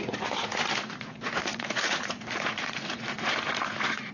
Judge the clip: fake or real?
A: fake